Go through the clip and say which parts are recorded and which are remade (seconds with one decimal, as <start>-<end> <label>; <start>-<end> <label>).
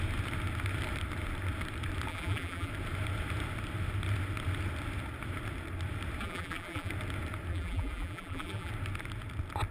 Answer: 0.0-2.1 recorded; 2.1-2.7 remade; 2.7-6.2 recorded; 6.2-6.9 remade; 6.9-7.5 recorded; 7.5-8.7 remade; 8.7-9.7 recorded